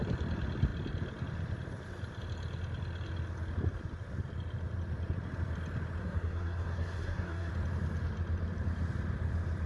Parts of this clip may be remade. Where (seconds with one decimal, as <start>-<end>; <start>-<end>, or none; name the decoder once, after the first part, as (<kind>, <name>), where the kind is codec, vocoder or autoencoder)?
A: 6.0-7.5 (codec, SNAC)